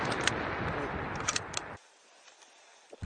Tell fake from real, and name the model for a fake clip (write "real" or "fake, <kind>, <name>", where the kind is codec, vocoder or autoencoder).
real